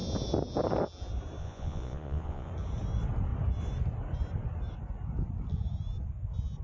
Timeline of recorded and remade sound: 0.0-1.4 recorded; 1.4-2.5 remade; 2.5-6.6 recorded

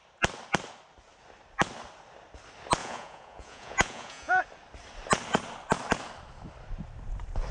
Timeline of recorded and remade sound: 0.0-2.8 recorded; 2.8-4.4 remade; 4.4-7.5 recorded